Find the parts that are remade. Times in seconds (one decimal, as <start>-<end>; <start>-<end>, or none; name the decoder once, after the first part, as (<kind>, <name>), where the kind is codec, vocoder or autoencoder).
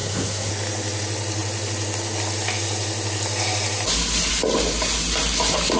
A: 0.0-0.5 (codec, SNAC)